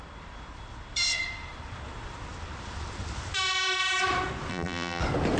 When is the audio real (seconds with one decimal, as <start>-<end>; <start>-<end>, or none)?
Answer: 0.0-4.5; 5.0-5.4